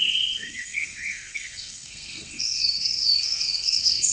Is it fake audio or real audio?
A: fake